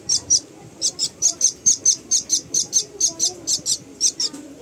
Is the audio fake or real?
real